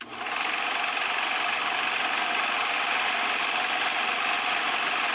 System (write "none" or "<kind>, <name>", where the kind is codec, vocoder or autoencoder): none